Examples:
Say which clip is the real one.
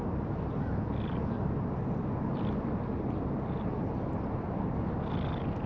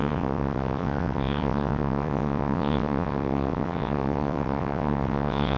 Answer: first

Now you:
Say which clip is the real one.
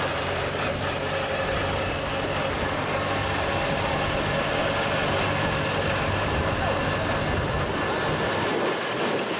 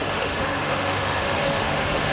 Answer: first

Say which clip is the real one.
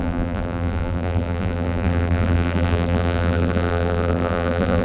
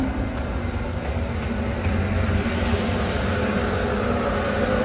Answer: second